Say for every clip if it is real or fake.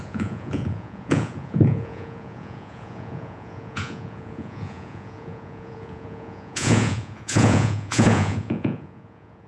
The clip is fake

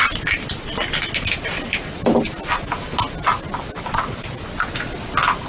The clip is real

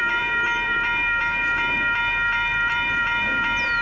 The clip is fake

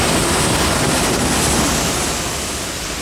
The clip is real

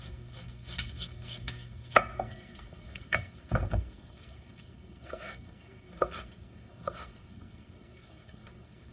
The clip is fake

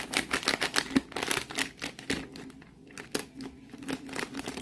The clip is real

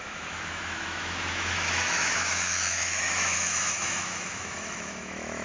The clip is fake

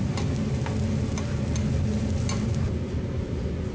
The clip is real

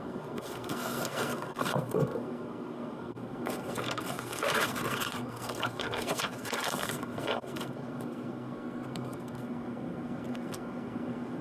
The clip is fake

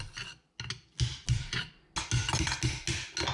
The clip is real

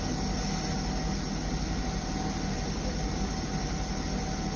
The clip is real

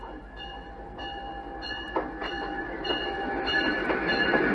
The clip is real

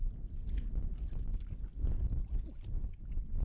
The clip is real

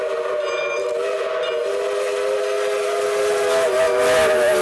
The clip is real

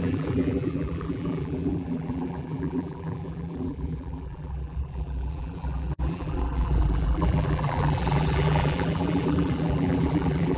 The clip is fake